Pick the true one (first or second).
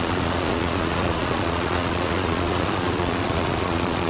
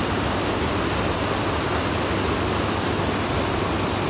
second